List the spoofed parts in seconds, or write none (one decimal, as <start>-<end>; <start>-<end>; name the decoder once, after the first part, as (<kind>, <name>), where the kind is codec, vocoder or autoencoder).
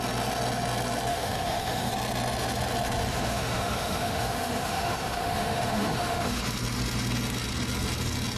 1.1-1.9 (autoencoder, DAC-VAE); 3.1-6.4